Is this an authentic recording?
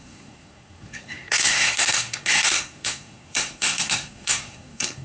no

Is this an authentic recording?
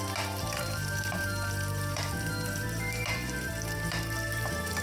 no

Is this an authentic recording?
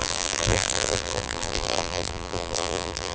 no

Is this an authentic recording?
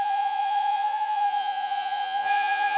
no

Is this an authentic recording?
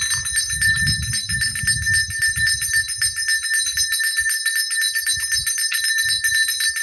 yes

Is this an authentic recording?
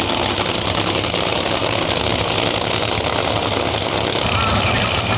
yes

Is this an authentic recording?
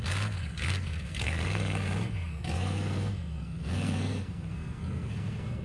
no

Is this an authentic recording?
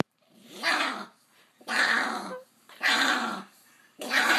no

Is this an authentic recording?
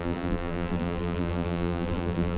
no